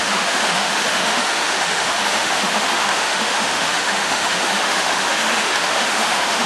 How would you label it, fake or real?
fake